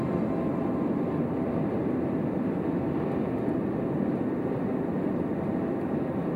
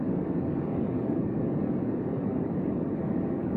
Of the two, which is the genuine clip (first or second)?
first